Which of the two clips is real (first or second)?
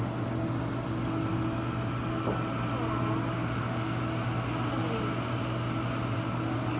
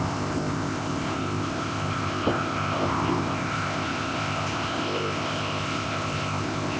first